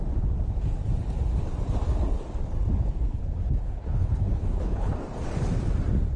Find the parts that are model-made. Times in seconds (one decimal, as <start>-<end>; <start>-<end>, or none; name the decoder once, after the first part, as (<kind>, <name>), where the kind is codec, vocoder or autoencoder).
3.2-4.9 (codec, HILCodec)